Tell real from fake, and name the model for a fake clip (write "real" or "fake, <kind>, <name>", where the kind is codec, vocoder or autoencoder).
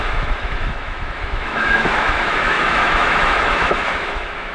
fake, autoencoder, DAC-VAE